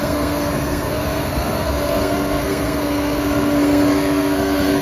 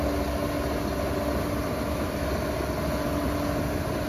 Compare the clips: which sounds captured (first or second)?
second